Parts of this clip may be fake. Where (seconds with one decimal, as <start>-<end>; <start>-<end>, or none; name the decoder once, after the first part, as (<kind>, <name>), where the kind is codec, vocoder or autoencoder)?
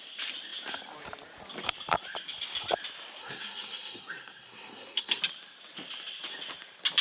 3.2-5.2 (codec, SNAC)